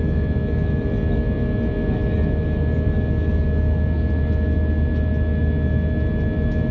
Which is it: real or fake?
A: real